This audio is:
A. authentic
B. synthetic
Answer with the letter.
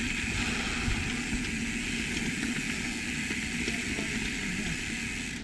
A